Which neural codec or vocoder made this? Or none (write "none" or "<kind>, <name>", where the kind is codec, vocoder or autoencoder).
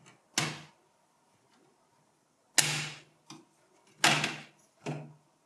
none